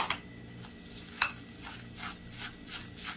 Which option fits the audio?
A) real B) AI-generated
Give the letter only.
A